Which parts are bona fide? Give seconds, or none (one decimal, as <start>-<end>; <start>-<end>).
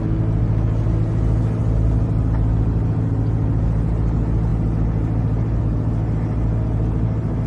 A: 0.0-7.5